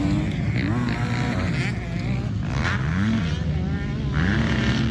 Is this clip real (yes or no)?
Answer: yes